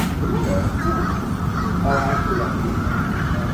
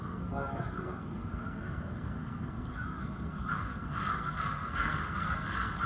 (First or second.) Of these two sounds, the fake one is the second